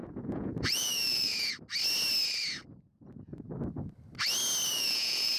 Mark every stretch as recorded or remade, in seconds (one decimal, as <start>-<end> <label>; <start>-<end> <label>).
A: 0.0-1.5 remade; 1.5-4.7 recorded; 4.7-5.4 remade